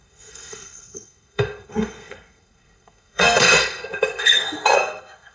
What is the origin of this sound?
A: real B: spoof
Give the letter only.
B